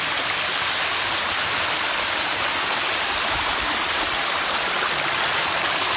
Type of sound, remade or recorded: recorded